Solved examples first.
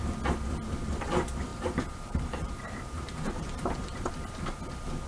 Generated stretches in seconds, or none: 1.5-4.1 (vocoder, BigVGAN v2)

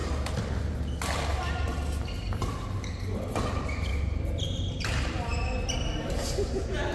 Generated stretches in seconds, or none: 1.3-3.2 (vocoder, BigVGAN v2); 3.9-6.5